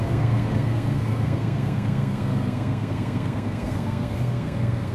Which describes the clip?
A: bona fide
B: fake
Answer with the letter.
B